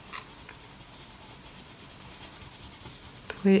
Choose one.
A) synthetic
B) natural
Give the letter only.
B